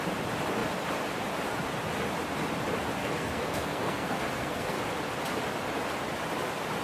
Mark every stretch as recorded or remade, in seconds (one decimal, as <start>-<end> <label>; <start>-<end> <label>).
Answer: 0.0-3.0 recorded; 3.0-4.8 remade; 4.8-6.8 recorded